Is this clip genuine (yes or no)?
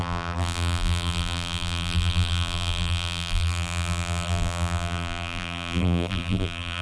no